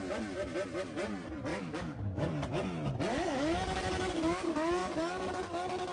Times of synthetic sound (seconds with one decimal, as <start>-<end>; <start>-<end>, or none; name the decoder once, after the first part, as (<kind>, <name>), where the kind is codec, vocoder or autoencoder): 1.5-2.3 (codec, DAC); 3.1-3.8; 4.8-5.3